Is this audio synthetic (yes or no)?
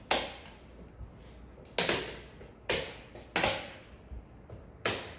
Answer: no